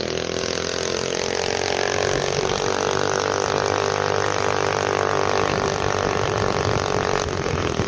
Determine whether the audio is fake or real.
real